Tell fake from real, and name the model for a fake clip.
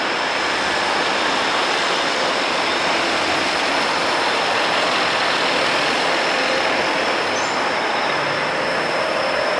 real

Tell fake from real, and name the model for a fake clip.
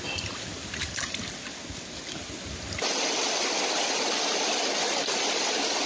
real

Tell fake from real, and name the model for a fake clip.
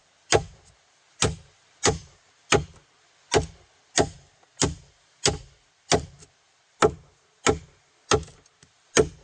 real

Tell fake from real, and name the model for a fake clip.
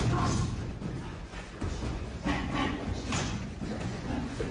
fake, vocoder, Vocos